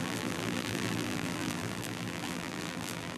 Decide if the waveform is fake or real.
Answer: fake